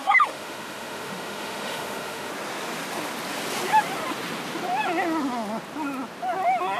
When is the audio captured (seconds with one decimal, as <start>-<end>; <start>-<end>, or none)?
2.3-6.8